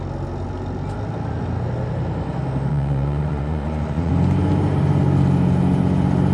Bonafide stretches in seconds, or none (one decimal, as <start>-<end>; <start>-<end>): 0.0-2.7; 4.1-6.3